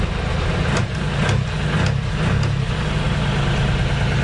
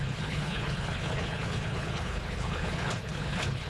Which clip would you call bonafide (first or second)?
first